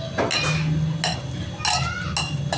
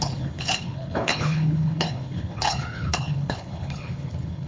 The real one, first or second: first